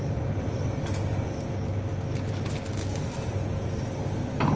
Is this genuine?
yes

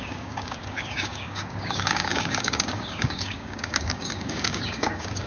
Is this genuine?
no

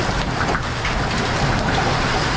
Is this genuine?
yes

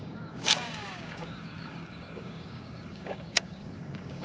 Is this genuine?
no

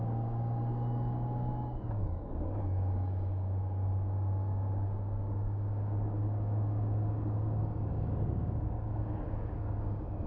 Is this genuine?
no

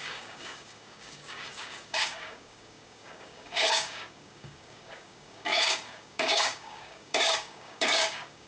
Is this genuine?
no